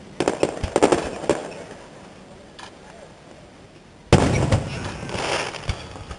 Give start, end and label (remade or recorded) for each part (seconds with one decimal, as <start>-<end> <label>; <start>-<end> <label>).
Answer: 0.0-6.2 recorded